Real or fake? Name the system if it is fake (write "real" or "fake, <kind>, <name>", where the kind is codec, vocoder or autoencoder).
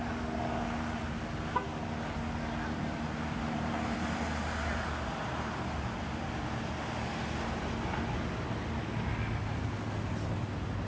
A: real